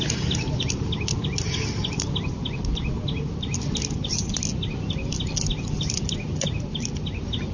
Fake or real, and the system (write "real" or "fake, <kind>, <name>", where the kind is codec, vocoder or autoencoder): real